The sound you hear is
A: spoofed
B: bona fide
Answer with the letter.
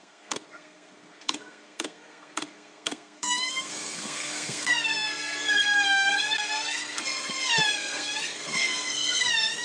A